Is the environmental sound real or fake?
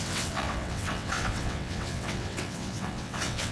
fake